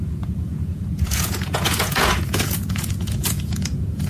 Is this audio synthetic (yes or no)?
yes